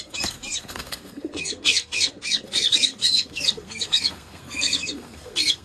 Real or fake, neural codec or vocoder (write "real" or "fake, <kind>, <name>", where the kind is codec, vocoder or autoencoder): fake, codec, SNAC